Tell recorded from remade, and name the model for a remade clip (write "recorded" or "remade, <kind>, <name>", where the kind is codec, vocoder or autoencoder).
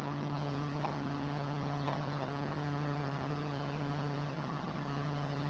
remade, vocoder, HiFi-GAN